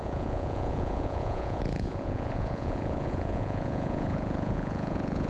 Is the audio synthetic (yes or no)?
yes